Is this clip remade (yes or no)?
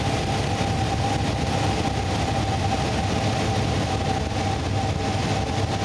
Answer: no